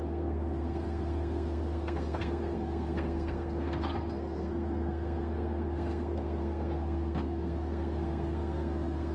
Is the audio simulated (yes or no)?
yes